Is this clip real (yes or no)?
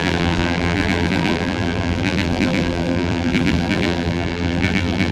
no